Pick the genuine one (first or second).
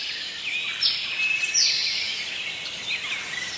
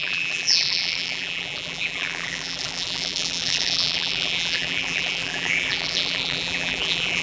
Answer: first